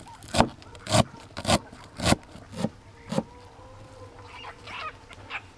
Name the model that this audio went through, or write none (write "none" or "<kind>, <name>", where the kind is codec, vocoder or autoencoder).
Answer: none